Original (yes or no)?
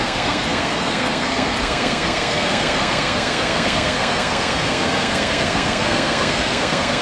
no